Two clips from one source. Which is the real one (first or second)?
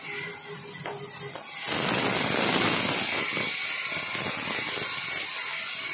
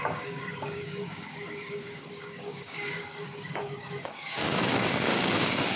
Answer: first